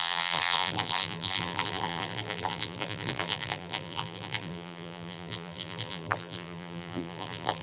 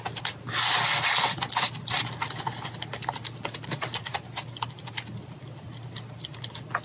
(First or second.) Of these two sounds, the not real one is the first